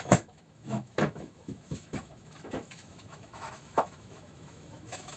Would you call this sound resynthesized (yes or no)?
yes